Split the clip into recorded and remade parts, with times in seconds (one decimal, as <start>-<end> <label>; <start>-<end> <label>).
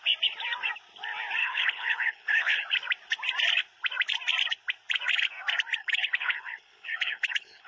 0.0-1.4 recorded; 1.4-2.6 remade; 2.6-5.8 recorded; 5.8-7.7 remade